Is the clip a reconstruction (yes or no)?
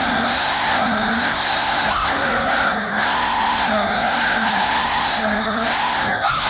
yes